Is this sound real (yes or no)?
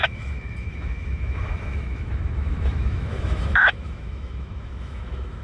no